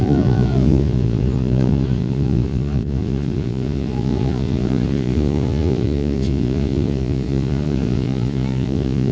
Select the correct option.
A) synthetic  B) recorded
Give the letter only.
A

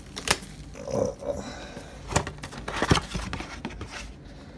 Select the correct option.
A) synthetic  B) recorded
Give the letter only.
B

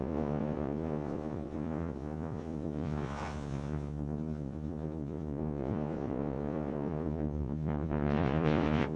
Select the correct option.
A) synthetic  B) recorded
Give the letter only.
A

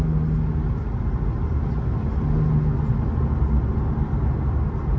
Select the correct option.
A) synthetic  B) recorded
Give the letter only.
B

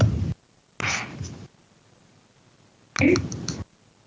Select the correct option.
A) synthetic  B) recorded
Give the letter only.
B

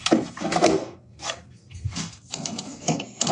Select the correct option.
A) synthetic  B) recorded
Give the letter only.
A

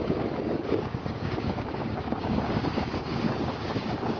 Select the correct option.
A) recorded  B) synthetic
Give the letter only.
B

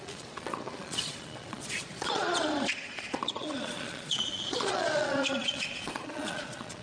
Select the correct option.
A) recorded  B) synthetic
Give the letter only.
B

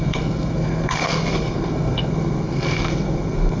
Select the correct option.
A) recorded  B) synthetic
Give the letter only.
B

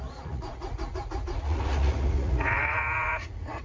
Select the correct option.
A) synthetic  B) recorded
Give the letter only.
A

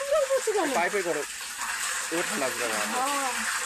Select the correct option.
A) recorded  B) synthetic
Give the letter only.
A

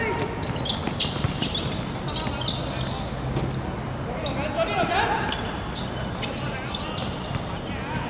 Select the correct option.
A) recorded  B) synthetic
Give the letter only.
A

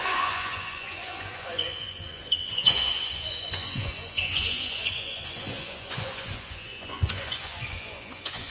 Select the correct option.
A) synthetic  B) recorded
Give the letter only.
A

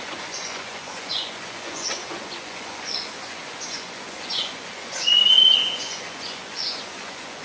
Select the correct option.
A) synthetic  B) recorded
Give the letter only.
A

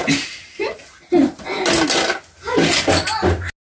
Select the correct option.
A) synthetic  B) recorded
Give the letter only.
B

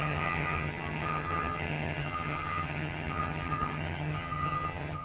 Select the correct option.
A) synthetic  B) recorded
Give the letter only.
A